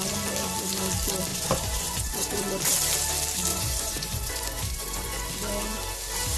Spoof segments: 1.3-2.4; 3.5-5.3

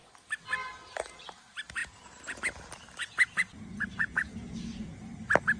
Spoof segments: 1.8-2.4; 3.0-5.1